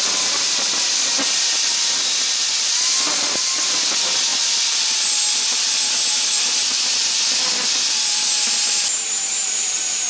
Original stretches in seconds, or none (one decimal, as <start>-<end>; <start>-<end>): 0.0-10.1